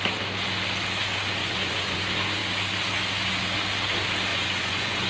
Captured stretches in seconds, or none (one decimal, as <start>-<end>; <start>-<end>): 0.0-1.4; 2.0-4.3